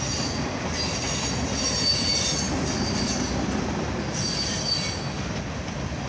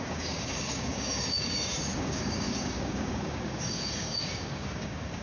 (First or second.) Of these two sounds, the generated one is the second